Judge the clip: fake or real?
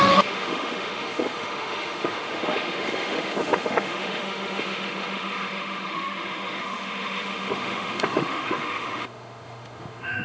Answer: fake